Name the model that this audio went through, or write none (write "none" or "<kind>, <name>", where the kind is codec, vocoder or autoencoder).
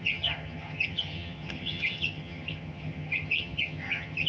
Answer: vocoder, HiFi-GAN